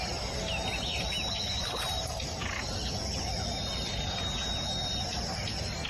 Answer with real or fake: real